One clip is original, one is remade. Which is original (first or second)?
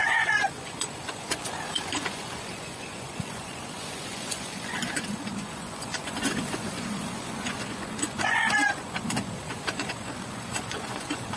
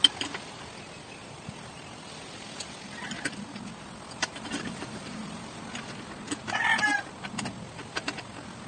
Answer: second